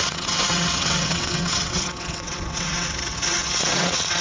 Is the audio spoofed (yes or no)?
yes